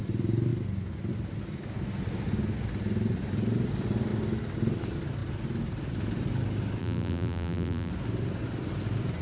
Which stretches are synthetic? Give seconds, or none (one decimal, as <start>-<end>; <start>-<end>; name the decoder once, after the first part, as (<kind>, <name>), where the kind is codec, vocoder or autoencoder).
6.8-7.9 (vocoder, BigVGAN v2)